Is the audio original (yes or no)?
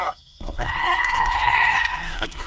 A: no